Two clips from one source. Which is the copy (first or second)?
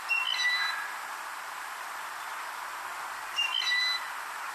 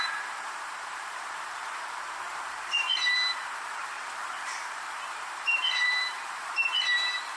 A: second